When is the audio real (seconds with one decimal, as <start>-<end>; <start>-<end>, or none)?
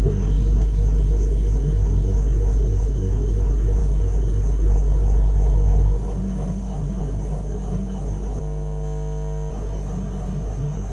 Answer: 8.4-9.5